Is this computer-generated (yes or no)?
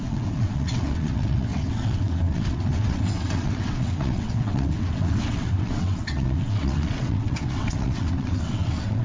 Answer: yes